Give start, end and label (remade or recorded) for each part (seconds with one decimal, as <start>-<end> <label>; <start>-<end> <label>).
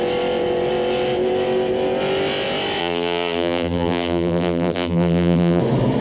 0.0-2.8 recorded; 2.8-5.6 remade; 5.6-6.0 recorded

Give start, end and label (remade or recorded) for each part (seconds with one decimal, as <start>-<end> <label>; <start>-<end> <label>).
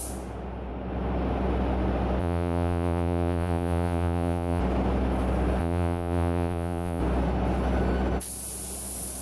0.0-2.2 recorded; 2.2-4.6 remade; 4.6-5.6 recorded; 5.6-7.0 remade; 7.0-9.2 recorded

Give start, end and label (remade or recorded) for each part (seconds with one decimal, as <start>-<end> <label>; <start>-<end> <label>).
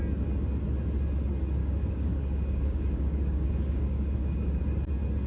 0.0-1.6 recorded; 1.6-4.7 remade; 4.7-5.3 recorded